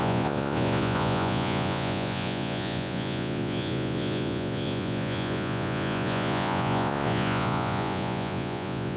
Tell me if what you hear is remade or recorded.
remade